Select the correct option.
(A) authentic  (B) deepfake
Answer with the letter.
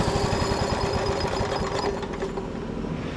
A